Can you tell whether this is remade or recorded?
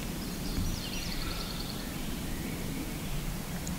remade